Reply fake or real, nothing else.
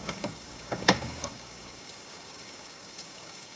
fake